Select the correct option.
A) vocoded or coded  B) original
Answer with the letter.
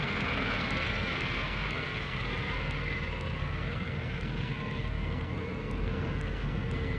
A